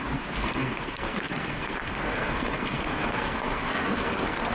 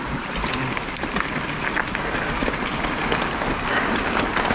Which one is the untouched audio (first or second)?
second